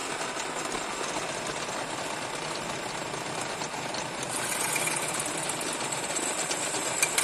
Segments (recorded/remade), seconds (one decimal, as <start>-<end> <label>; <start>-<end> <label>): 0.0-7.2 recorded